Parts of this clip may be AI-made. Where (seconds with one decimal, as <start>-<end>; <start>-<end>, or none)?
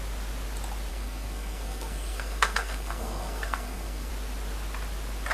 0.9-4.1